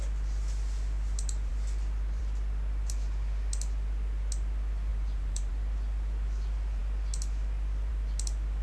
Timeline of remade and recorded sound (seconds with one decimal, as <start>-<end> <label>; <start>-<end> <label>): 0.0-4.9 recorded; 4.9-5.5 remade; 5.5-8.6 recorded